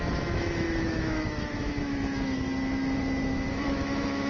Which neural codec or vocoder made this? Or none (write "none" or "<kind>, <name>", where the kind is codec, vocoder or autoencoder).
autoencoder, DAC-VAE